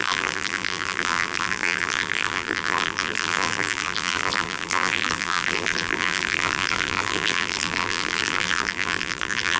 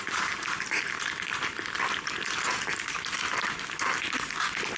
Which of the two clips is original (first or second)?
second